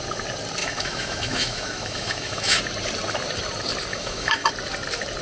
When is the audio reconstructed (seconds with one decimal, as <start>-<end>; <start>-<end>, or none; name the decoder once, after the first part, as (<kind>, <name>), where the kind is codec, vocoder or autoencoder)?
0.6-2.6 (autoencoder, DAC-VAE); 3.9-4.5